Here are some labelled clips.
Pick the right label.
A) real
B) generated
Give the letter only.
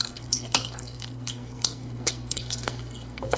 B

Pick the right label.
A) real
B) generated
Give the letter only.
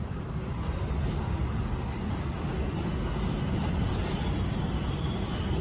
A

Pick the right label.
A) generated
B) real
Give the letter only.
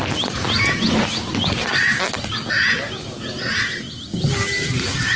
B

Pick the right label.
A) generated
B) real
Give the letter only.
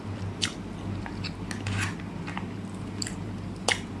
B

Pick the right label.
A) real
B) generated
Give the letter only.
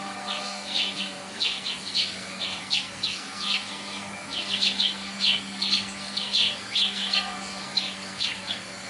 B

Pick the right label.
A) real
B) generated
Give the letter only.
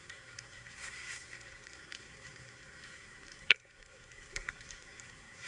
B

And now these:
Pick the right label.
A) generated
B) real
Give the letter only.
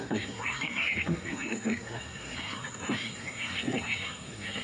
A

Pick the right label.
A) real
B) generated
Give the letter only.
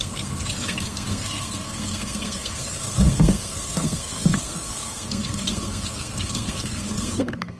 B